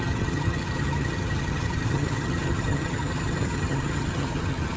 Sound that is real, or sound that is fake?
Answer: fake